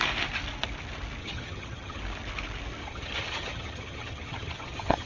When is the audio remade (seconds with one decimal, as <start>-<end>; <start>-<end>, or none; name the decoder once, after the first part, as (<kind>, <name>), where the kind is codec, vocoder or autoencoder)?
1.2-2.0 (vocoder, HiFi-GAN); 2.8-5.1